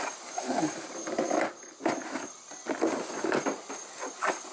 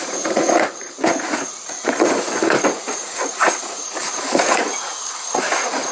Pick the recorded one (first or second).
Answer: first